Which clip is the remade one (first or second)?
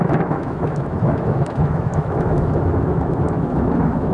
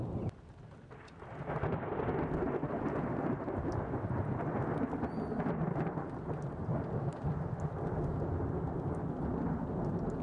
first